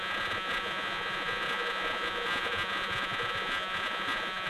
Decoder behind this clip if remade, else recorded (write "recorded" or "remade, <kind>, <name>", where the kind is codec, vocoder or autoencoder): remade, vocoder, Vocos